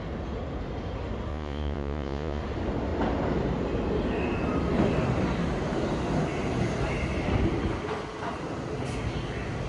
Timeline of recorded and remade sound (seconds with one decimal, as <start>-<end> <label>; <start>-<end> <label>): 0.0-1.3 recorded; 1.3-2.4 remade; 2.4-9.7 recorded